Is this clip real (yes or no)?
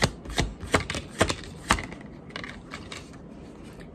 yes